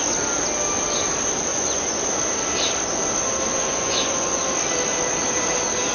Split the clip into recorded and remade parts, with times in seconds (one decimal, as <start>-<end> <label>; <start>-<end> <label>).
0.0-1.5 recorded; 1.5-2.0 remade; 2.0-3.6 recorded; 3.6-4.4 remade; 4.4-5.9 recorded